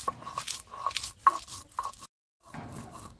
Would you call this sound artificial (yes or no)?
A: no